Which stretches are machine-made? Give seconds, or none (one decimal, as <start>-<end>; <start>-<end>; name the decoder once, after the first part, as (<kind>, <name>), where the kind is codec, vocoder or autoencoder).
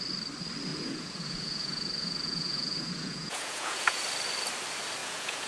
0.7-4.0 (vocoder, Vocos); 5.0-5.5